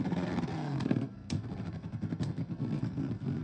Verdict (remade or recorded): remade